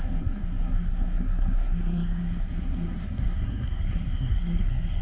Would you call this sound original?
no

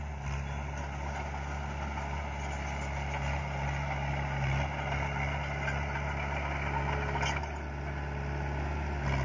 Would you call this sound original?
yes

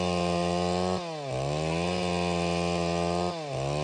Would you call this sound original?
yes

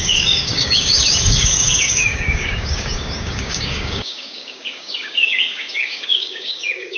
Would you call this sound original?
no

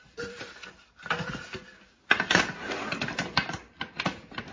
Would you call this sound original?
no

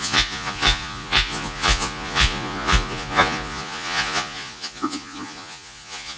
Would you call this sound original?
no